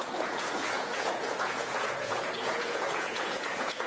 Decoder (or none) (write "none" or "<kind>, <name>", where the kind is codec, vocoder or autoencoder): vocoder, Vocos